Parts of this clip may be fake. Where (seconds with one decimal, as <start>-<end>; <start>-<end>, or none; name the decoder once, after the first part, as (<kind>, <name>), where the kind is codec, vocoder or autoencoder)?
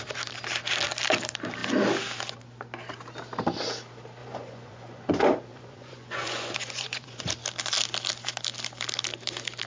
4.2-5.1 (vocoder, Vocos); 5.5-7.3